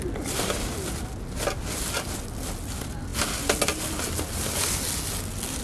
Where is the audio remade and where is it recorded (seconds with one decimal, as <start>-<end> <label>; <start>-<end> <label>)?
0.0-5.6 recorded